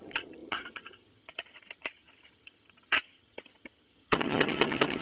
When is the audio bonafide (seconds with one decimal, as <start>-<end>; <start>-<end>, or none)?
none